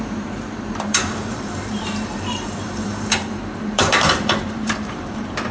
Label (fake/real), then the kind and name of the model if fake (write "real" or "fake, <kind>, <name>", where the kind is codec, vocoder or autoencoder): fake, vocoder, BigVGAN v2